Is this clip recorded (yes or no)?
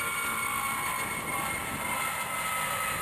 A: yes